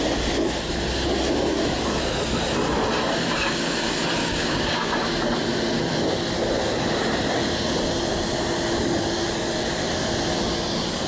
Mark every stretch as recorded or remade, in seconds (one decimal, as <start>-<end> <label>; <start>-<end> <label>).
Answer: 0.0-4.2 recorded; 4.2-5.0 remade; 5.0-11.1 recorded